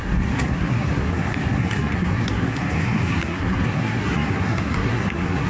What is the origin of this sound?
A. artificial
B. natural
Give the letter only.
A